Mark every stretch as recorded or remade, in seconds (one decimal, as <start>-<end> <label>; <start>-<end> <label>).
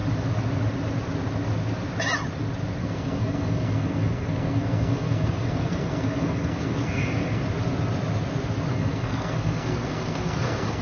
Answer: 0.0-2.8 recorded; 2.8-7.4 remade; 7.4-8.7 recorded; 8.7-10.8 remade